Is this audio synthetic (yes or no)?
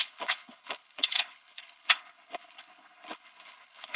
yes